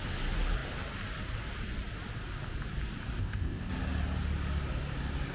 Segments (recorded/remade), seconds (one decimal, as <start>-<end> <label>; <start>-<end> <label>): 0.0-3.2 recorded; 3.2-3.7 remade; 3.7-5.3 recorded